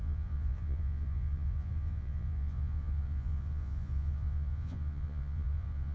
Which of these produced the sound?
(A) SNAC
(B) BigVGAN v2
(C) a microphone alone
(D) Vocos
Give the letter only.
D